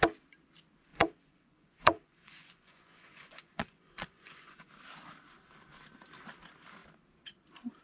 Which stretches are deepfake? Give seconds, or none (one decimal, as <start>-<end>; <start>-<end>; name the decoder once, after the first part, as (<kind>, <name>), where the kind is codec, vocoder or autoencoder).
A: 0.9-4.7 (vocoder, Vocos)